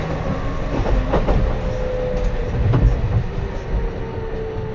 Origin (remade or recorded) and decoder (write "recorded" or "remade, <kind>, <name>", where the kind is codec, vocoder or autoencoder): recorded